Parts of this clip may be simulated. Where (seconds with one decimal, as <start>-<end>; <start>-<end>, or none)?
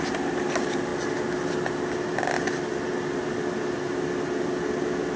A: none